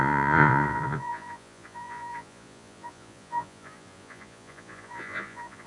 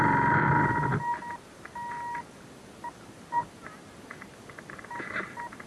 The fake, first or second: first